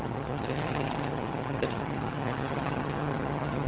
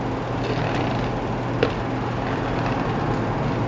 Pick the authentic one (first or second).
second